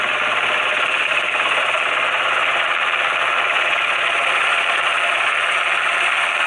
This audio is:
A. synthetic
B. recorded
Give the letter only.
B